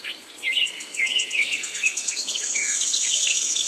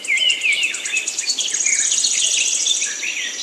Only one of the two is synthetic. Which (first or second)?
first